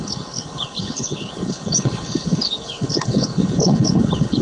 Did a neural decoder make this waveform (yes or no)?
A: yes